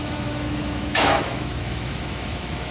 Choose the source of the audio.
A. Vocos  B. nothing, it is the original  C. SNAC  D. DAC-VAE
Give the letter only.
D